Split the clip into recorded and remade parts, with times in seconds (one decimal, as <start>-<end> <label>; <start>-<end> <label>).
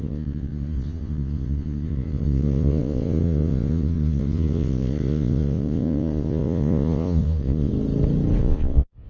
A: 0.0-7.7 remade; 7.7-8.4 recorded; 8.4-9.1 remade